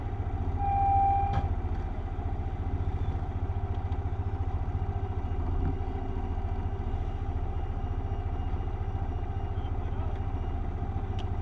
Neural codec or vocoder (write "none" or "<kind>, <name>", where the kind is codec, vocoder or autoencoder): none